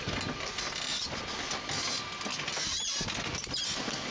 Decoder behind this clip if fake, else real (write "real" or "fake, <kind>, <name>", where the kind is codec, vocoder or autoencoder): real